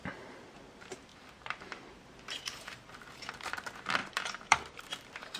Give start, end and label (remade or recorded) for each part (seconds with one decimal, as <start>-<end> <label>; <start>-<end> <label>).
0.0-1.1 recorded; 1.1-1.6 remade; 1.6-4.0 recorded; 4.0-4.9 remade; 4.9-5.4 recorded